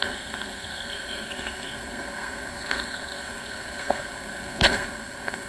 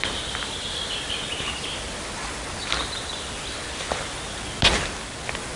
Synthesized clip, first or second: first